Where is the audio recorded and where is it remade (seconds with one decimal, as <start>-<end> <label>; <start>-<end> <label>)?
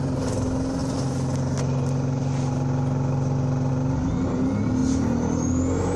0.0-6.0 recorded